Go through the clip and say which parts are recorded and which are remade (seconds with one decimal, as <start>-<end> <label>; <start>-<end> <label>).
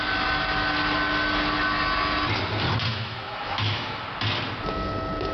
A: 0.0-2.9 recorded; 2.9-4.0 remade; 4.0-5.3 recorded